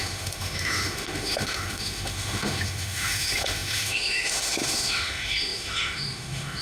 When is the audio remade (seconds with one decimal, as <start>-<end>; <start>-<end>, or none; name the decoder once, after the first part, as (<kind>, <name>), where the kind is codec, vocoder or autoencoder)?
0.0-6.6 (autoencoder, DAC-VAE)